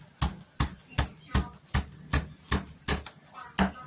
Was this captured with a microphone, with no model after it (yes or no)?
yes